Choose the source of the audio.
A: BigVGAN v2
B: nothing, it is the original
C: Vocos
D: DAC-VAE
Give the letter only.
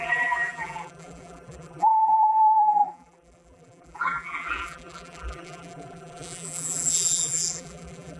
A